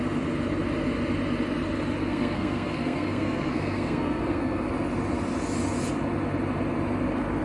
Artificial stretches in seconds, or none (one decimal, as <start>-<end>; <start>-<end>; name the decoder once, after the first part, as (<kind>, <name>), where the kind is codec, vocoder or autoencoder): 2.0-4.7 (codec, SNAC)